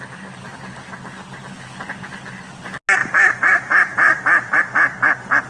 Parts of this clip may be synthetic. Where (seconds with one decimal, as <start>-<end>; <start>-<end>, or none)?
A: 3.0-4.6